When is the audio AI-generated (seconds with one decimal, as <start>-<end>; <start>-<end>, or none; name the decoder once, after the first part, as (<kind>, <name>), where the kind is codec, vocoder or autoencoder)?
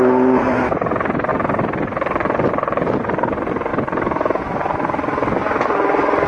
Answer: 1.3-3.0 (vocoder, BigVGAN v2)